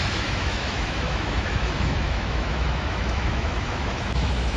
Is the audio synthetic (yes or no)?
yes